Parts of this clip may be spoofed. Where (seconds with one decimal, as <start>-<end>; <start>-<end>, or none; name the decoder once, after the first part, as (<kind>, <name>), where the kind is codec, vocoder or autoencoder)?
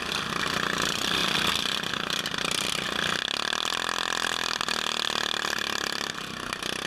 none